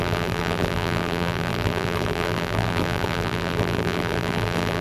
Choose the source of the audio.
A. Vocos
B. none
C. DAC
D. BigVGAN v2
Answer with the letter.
D